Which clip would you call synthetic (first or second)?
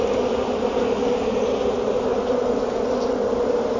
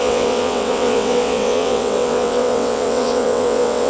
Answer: second